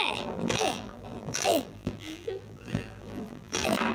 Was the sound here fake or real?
fake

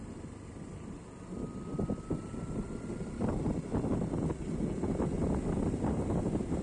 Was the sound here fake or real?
real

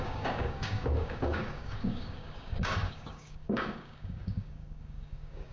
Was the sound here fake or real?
fake